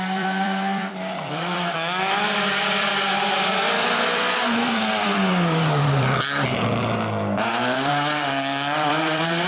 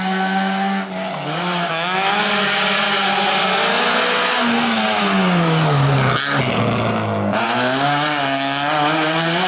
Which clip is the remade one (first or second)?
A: first